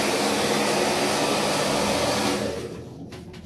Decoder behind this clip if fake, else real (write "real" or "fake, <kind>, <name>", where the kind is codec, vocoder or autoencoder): real